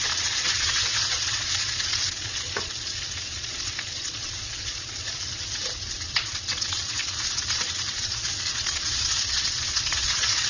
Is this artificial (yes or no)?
yes